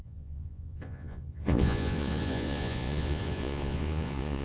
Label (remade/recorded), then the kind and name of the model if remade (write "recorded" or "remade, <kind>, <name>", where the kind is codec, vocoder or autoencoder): remade, vocoder, Vocos